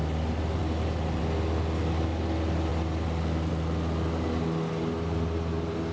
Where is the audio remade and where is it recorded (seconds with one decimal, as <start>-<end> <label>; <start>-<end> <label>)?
0.0-5.9 recorded